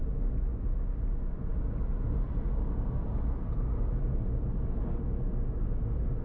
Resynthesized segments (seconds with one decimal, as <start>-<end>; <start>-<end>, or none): 0.5-1.0